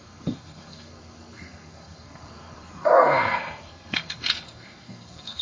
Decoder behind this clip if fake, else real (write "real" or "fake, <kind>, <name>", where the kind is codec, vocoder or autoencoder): fake, codec, SNAC